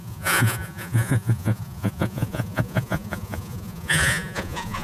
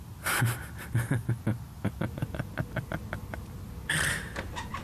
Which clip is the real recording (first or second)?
second